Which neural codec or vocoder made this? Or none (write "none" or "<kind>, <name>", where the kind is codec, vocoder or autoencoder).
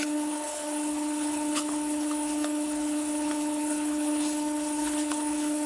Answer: codec, HILCodec